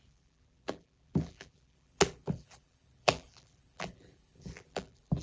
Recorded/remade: remade